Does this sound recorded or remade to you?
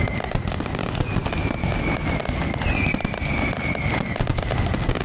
recorded